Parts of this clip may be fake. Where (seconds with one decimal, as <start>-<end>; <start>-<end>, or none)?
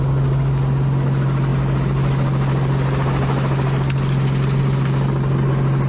none